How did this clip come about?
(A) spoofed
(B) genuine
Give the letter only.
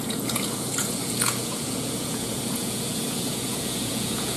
A